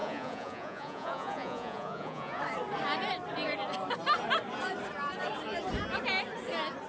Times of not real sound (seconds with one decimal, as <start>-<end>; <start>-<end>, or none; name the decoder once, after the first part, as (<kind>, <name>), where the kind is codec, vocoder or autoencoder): 0.0-2.4 (vocoder, Vocos)